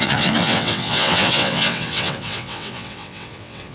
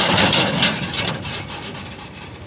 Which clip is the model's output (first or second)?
first